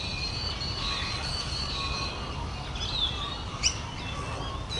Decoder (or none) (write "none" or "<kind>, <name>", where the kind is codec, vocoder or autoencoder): none